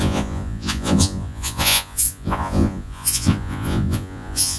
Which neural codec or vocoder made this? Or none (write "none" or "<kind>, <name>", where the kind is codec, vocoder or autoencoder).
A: vocoder, Vocos